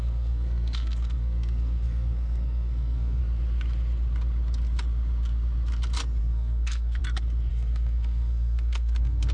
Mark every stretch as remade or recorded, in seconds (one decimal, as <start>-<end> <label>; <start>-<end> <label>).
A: 0.0-3.2 remade; 3.2-6.2 recorded; 6.2-7.0 remade; 7.0-7.5 recorded; 7.5-9.3 remade